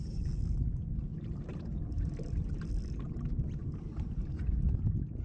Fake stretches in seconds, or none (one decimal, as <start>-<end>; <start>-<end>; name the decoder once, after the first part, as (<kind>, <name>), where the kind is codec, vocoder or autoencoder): 1.1-2.7 (vocoder, BigVGAN v2); 3.6-5.2